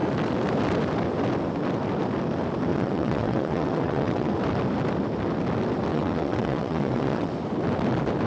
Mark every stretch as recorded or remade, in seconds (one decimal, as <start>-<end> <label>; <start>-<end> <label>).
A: 0.0-2.7 recorded; 2.7-4.3 remade; 4.3-5.9 recorded; 5.9-7.3 remade; 7.3-8.3 recorded